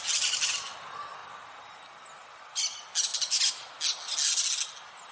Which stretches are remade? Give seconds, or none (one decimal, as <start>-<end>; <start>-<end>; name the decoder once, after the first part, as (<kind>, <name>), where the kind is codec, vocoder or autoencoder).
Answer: none